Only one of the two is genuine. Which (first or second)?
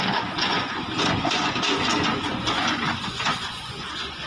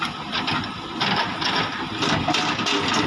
second